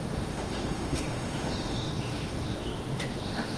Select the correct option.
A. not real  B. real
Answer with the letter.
A